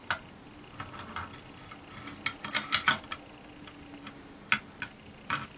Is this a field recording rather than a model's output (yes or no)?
yes